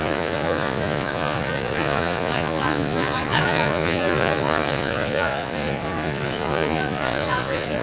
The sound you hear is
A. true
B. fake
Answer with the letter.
B